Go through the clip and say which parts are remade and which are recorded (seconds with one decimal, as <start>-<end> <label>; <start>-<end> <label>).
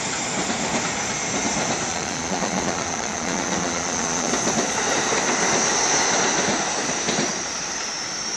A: 0.0-1.9 recorded; 1.9-4.3 remade; 4.3-8.4 recorded